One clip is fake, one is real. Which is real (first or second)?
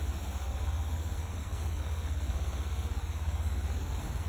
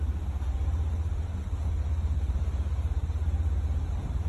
second